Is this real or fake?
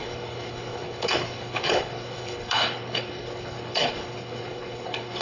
fake